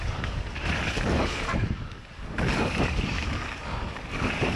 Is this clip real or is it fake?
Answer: fake